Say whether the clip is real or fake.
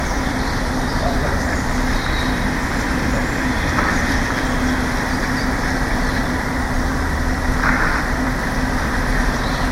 fake